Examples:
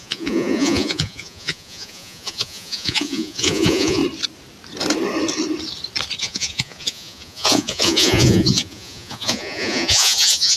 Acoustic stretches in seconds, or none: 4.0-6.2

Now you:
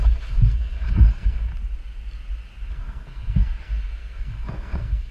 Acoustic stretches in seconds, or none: 1.5-2.7

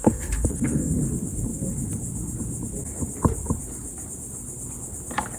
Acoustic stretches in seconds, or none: 0.9-5.4

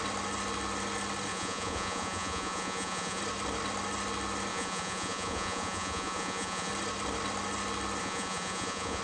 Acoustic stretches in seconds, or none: 0.0-1.3; 3.2-4.5; 6.7-8.0